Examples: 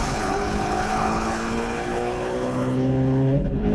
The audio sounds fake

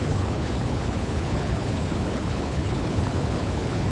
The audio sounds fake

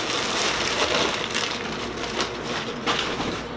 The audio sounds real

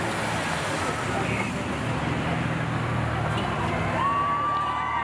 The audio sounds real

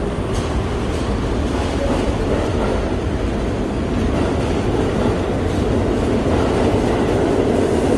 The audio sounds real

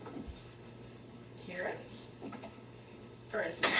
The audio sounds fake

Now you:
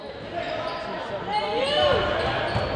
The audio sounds real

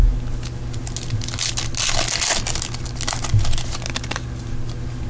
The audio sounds real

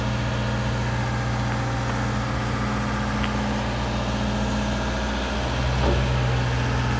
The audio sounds real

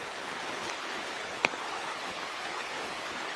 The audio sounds fake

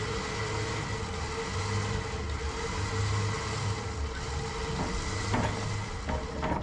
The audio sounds real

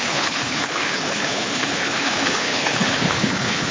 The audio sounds fake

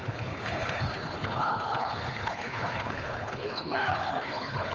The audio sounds fake